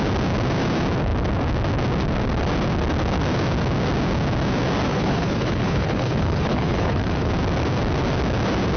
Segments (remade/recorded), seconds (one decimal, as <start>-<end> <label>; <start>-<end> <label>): 0.0-4.9 recorded; 4.9-7.3 remade; 7.3-8.8 recorded